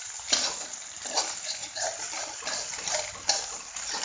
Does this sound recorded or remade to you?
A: recorded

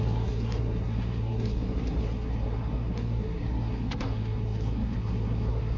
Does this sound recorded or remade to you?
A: remade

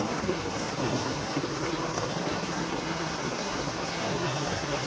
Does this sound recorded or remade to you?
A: remade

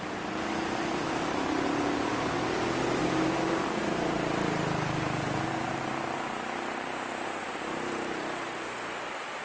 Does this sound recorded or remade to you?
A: recorded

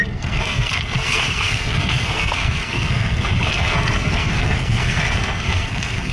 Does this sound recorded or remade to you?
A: remade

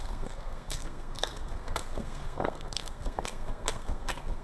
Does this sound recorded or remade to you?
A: remade